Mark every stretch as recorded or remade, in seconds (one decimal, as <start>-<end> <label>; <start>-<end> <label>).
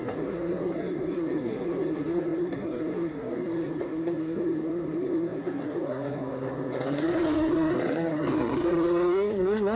0.0-9.8 remade